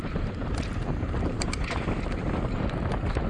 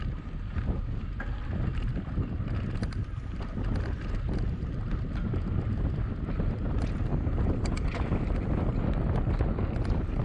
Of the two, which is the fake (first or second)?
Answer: first